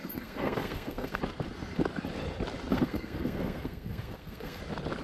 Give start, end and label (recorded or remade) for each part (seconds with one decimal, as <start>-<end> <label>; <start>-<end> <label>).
0.0-1.2 remade; 1.2-2.7 recorded; 2.7-4.6 remade; 4.6-5.0 recorded